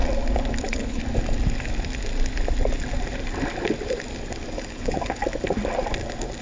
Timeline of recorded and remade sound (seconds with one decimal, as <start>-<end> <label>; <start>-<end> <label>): 0.0-0.6 recorded; 0.6-1.0 remade; 1.0-4.7 recorded; 4.7-5.2 remade; 5.2-6.4 recorded